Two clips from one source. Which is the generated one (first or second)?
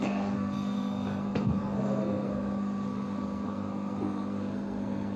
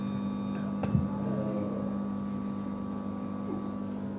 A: first